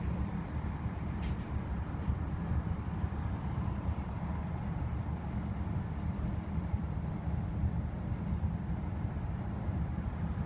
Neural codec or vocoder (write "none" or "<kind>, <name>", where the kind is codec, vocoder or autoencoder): vocoder, BigVGAN v2